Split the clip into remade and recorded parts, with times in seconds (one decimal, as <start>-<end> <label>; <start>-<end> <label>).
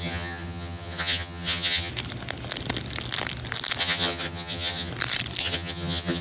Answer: 0.0-1.9 remade; 1.9-3.8 recorded; 3.8-4.9 remade; 4.9-5.4 recorded; 5.4-6.2 remade